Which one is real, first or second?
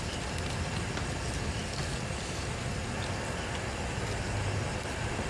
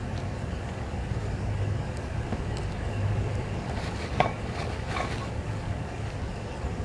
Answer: first